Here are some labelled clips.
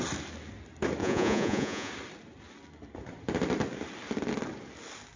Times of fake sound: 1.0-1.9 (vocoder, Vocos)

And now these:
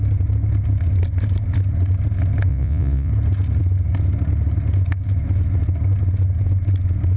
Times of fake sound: 2.5-3.1 (vocoder, Vocos)

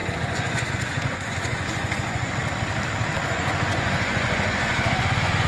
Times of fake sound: 0.0-2.4 (vocoder, Vocos); 3.3-5.5

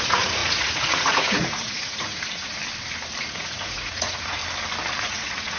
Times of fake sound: 0.0-2.6 (vocoder, Vocos); 3.2-4.4; 5.0-5.6

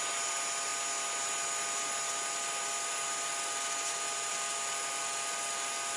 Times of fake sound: none

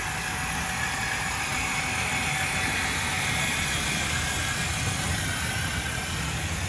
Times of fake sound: none

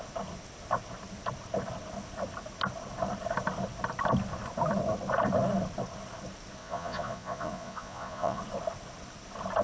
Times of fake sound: 6.6-8.4 (vocoder, Vocos)